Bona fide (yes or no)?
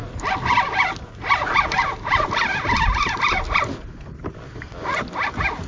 yes